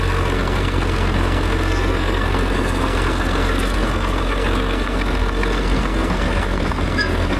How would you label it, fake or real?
fake